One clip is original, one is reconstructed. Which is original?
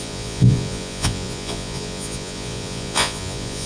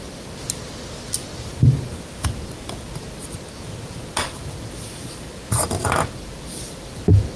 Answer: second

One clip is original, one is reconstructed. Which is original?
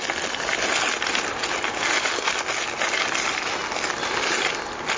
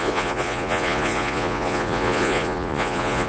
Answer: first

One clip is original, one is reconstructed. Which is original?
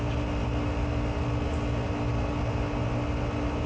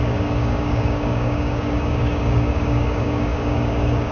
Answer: first